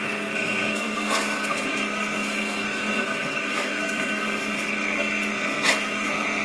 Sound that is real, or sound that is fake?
fake